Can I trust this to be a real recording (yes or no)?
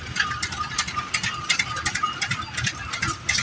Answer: yes